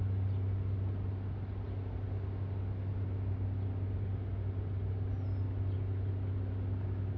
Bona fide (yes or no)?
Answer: yes